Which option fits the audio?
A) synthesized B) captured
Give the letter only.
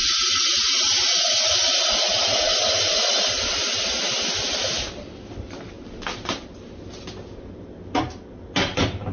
B